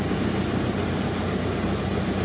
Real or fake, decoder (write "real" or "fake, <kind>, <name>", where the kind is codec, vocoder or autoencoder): real